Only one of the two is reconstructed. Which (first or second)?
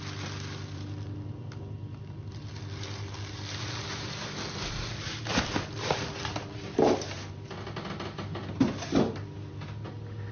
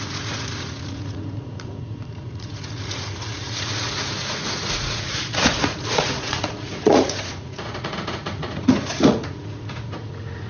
second